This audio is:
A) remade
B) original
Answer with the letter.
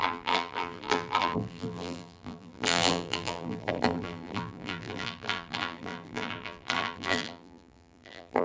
A